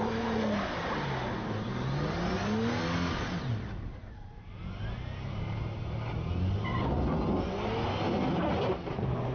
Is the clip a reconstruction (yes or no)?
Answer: no